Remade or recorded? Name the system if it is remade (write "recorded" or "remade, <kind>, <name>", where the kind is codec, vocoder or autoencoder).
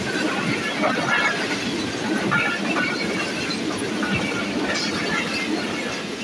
recorded